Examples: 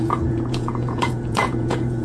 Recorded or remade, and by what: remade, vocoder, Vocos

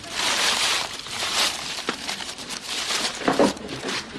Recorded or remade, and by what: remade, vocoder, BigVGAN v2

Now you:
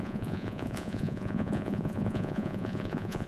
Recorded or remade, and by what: remade, vocoder, Vocos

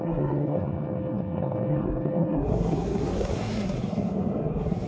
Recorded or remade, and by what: remade, codec, SNAC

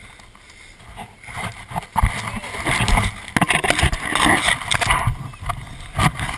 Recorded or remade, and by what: recorded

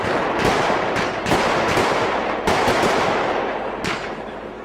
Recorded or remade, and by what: remade, vocoder, BigVGAN v2